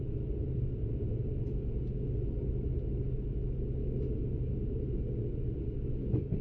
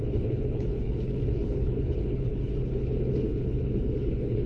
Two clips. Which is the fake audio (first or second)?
second